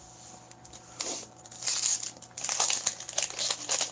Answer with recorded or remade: recorded